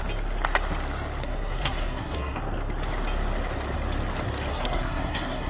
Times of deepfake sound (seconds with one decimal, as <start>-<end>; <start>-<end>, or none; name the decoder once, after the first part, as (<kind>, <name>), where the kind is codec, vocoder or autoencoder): 1.2-2.4 (codec, SNAC); 4.5-5.5